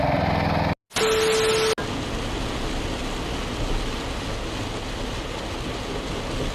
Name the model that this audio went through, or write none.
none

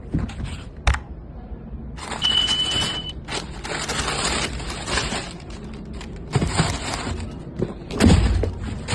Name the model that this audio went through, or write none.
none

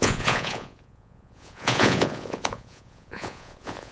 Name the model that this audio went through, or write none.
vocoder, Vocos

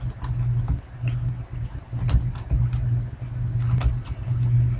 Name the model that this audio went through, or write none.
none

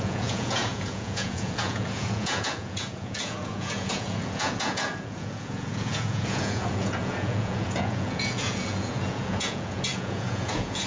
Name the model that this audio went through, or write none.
vocoder, Vocos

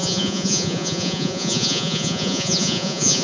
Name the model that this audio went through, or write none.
vocoder, Vocos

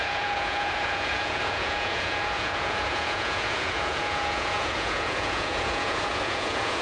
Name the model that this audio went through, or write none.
vocoder, Vocos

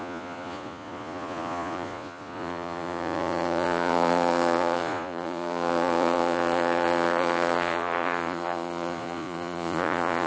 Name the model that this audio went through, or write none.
vocoder, Vocos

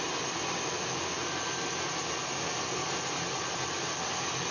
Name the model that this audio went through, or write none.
none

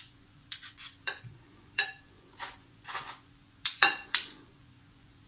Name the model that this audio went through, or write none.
vocoder, Vocos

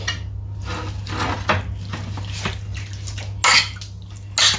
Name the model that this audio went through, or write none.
none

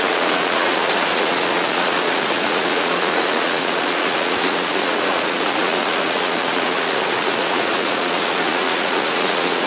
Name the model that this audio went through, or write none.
vocoder, Vocos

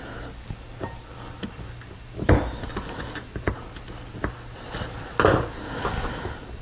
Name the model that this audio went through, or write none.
none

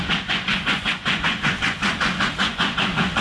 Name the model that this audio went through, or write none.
vocoder, Vocos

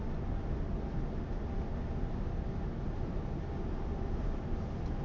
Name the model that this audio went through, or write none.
none